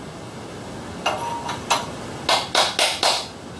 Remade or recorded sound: recorded